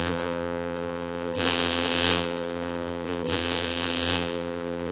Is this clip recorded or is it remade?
remade